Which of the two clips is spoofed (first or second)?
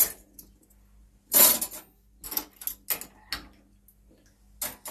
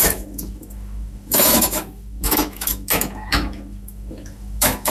second